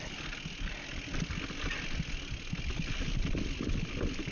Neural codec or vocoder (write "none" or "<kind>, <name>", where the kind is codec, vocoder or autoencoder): none